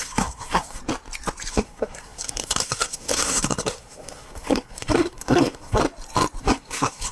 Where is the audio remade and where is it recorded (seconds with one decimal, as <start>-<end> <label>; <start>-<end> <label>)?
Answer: 0.0-0.8 remade; 0.8-1.5 recorded; 1.5-5.8 remade; 5.8-6.4 recorded; 6.4-7.1 remade